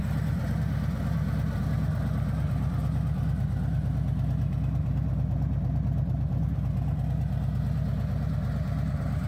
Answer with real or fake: real